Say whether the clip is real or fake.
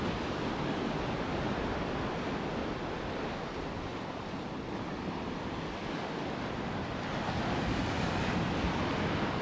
real